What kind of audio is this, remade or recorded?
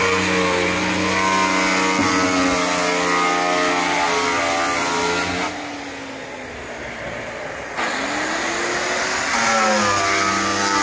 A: recorded